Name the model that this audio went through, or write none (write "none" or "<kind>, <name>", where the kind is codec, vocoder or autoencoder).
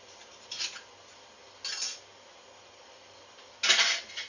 none